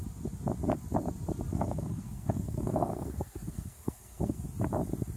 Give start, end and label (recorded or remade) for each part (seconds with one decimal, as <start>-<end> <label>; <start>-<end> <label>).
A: 0.0-1.5 recorded; 1.5-4.4 remade; 4.4-5.2 recorded